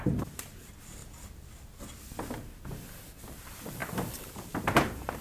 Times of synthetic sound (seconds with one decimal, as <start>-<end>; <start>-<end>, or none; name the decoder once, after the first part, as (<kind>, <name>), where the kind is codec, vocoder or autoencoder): 0.0-1.0 (vocoder, BigVGAN v2); 3.3-5.2